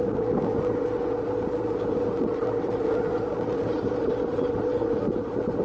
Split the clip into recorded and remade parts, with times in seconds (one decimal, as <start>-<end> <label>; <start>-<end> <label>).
0.0-3.5 recorded; 3.5-4.1 remade; 4.1-5.6 recorded